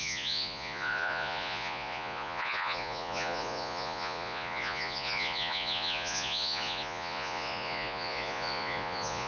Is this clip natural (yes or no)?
no